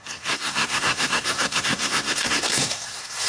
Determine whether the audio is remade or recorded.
remade